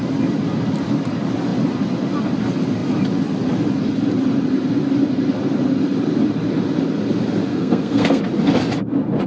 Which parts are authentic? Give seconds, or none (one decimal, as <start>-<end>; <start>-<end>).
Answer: 0.0-7.5; 8.2-9.3